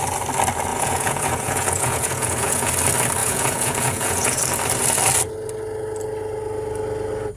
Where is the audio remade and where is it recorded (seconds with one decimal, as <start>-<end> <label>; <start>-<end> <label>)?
0.0-0.7 recorded; 0.7-2.7 remade; 2.7-3.2 recorded; 3.2-4.4 remade; 4.4-7.4 recorded